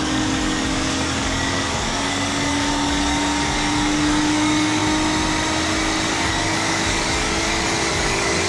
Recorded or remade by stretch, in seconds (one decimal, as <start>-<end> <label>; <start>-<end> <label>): 0.0-4.8 remade; 4.8-6.1 recorded; 6.1-8.5 remade

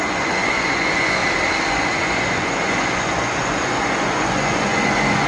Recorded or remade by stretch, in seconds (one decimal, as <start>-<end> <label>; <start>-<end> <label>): 0.0-1.2 remade; 1.2-1.7 recorded; 1.7-5.3 remade

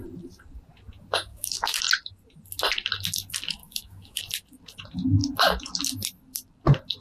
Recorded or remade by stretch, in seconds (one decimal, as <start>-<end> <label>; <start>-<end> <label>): 0.0-1.3 recorded; 1.3-1.8 remade; 1.8-3.6 recorded; 3.6-4.2 remade; 4.2-7.0 recorded

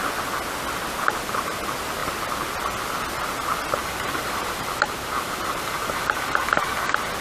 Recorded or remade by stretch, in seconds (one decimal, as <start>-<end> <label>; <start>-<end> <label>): 0.0-3.8 recorded; 3.8-6.7 remade; 6.7-7.2 recorded

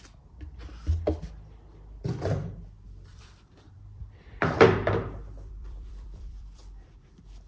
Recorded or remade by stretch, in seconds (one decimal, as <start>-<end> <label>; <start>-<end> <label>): 0.0-3.1 recorded; 3.1-7.1 remade; 7.1-7.5 recorded

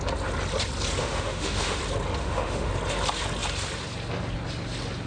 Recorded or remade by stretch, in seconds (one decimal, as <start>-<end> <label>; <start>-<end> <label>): 0.0-1.0 recorded; 1.0-1.8 remade; 1.8-2.2 recorded; 2.2-2.7 remade; 2.7-5.1 recorded